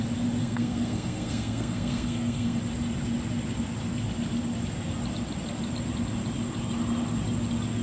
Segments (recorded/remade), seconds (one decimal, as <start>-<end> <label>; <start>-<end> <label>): 0.0-0.4 recorded; 0.4-2.6 remade; 2.6-7.8 recorded